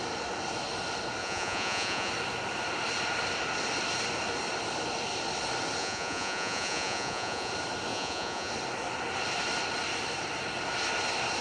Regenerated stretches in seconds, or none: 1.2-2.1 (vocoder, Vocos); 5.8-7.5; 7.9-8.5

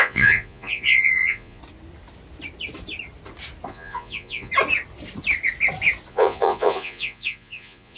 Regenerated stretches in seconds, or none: 0.0-1.6 (vocoder, Vocos); 3.7-4.5; 6.1-8.0

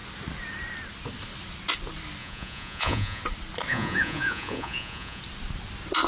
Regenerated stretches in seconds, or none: 2.2-3.2 (vocoder, Vocos); 3.7-5.2

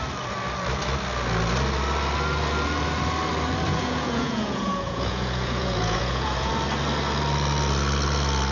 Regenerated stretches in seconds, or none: 3.7-6.5 (vocoder, Vocos)

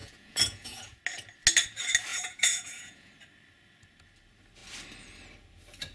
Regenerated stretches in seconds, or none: 0.0-1.0 (vocoder, Vocos); 2.1-3.1

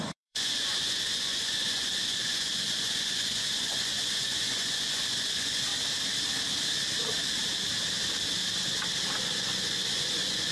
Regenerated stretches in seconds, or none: 0.0-5.7 (vocoder, Vocos); 9.2-10.5